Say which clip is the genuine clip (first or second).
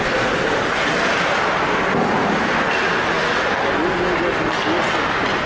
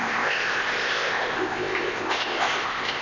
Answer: first